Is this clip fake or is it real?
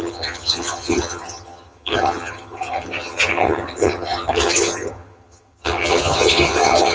fake